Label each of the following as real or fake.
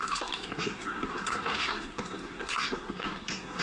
fake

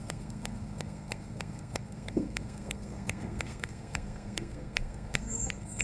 fake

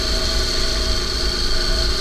real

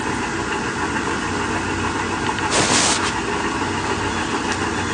real